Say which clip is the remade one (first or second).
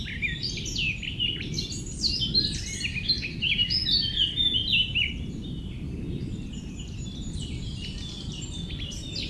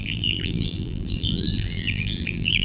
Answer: second